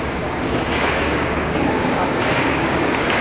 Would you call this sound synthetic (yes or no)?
yes